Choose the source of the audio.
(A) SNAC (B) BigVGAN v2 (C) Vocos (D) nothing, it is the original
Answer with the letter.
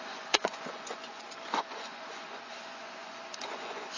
C